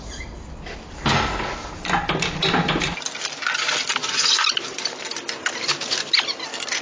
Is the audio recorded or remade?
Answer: recorded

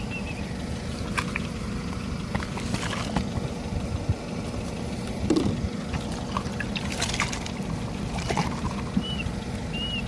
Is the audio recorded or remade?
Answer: recorded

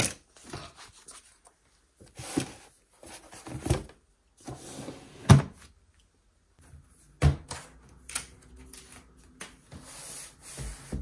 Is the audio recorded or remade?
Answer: recorded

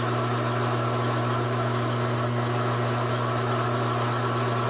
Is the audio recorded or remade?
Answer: recorded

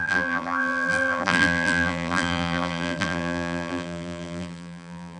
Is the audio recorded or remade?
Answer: remade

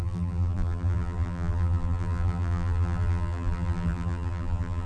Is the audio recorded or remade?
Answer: remade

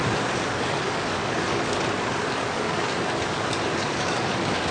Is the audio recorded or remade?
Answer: remade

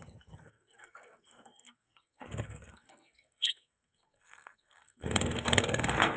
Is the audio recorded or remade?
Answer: remade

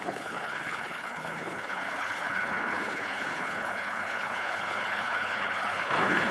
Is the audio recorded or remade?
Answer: remade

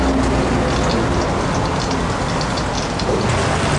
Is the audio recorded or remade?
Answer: recorded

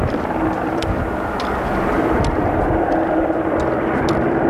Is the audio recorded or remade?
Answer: remade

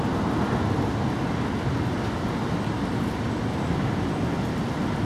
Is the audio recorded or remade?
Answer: recorded